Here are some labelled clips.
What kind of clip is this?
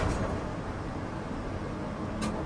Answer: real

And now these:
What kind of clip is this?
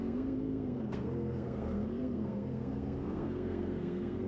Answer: fake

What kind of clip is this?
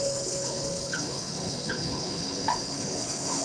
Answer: fake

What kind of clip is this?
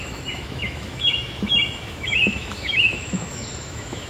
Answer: fake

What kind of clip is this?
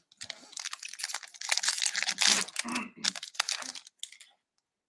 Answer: real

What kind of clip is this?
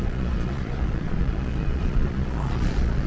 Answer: fake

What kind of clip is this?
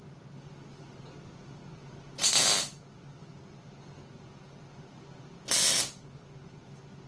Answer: real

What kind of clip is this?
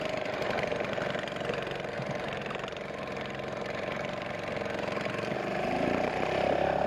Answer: fake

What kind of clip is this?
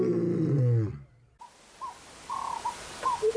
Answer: real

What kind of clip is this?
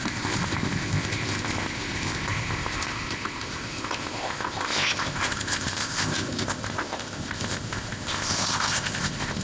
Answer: fake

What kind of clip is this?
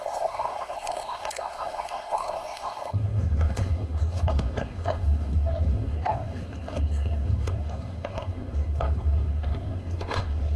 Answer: fake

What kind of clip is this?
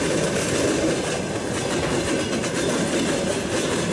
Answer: real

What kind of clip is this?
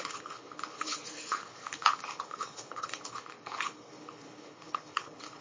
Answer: fake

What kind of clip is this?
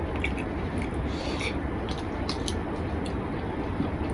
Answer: real